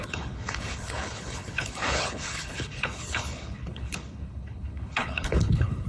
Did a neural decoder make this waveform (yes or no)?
yes